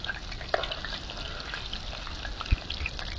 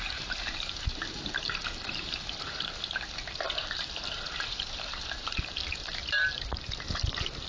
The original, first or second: first